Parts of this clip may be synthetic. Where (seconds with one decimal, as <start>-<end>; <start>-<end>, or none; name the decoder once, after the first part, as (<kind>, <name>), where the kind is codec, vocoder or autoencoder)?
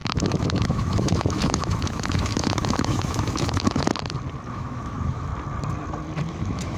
0.0-3.9 (autoencoder, DAC-VAE); 4.5-5.3; 6.3-6.8